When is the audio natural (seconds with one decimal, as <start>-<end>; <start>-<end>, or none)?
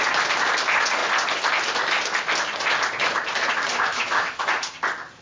0.0-3.9; 4.5-5.2